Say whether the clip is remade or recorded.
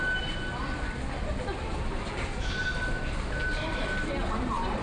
recorded